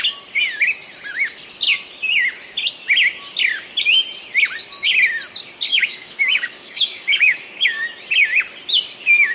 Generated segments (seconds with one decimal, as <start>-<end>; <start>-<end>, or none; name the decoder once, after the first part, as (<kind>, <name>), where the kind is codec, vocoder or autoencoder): 5.7-7.8 (codec, DAC)